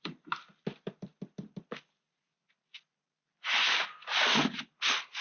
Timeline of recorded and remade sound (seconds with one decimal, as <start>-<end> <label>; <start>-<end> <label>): 0.0-5.2 recorded